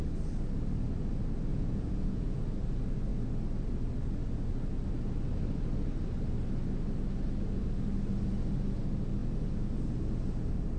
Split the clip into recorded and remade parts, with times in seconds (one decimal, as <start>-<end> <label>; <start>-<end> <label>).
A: 0.0-1.5 recorded; 1.5-2.4 remade; 2.4-10.8 recorded